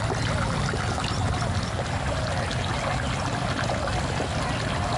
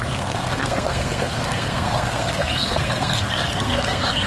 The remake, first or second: second